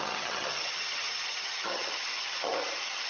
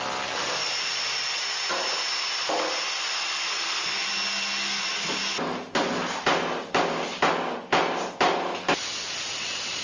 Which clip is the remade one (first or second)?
first